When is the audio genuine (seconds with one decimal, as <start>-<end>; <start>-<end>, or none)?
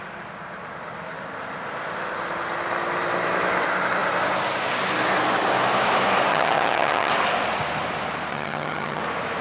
0.0-6.3; 7.1-8.3; 9.0-9.4